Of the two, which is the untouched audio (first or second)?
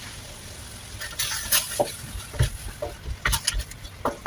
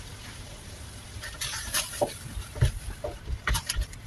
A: first